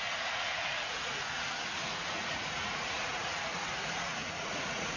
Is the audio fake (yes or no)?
yes